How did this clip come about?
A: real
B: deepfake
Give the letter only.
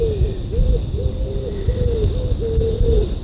A